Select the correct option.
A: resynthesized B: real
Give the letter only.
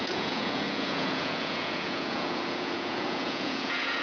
A